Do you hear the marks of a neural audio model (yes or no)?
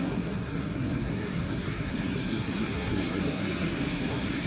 yes